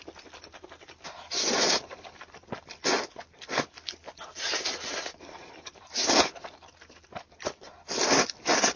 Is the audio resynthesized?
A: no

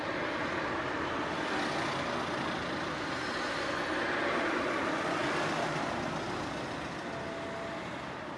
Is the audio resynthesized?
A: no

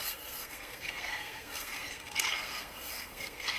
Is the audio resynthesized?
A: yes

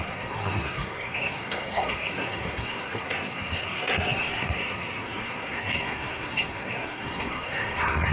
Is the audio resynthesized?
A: yes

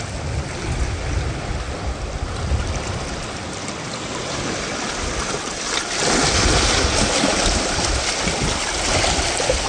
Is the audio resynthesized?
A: no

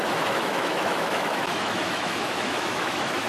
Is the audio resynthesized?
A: yes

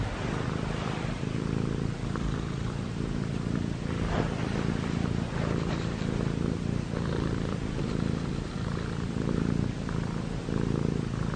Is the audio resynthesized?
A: no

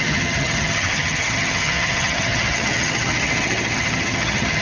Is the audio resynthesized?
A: yes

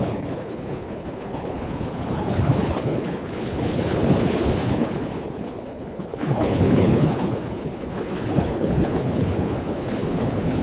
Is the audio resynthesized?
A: yes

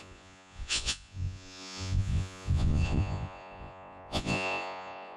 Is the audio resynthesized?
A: yes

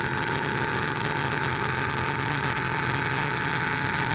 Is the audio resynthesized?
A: yes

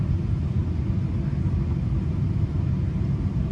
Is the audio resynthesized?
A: yes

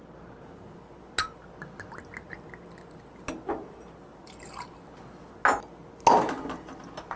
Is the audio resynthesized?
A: no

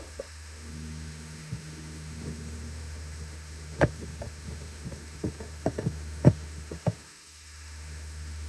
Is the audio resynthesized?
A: yes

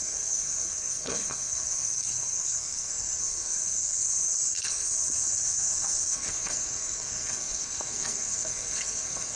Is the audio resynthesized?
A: yes